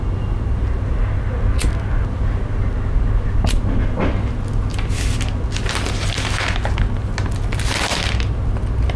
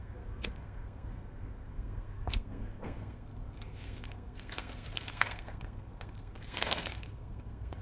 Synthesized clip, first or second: second